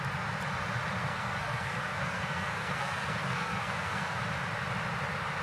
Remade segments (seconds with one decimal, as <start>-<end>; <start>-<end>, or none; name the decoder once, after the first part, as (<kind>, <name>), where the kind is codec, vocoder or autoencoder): 1.0-4.2 (codec, SNAC)